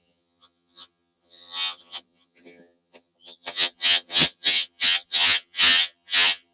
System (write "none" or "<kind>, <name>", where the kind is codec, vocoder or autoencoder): vocoder, HiFi-GAN